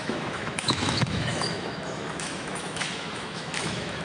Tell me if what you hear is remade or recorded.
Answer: remade